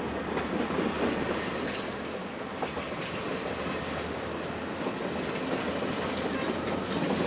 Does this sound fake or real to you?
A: real